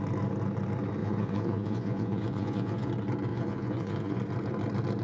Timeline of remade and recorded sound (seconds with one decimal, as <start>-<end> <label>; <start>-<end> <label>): 0.0-1.0 recorded; 1.0-2.9 remade; 2.9-3.3 recorded; 3.3-4.2 remade; 4.2-5.0 recorded